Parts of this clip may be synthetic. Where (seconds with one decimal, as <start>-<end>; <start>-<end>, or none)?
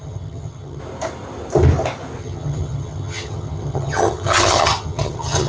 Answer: 0.0-0.8; 2.2-5.5